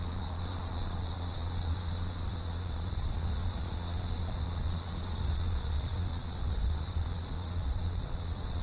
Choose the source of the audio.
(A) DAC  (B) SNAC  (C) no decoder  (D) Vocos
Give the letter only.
D